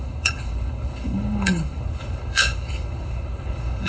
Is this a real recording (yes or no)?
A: no